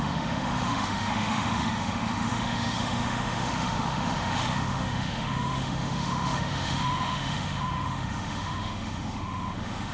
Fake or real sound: fake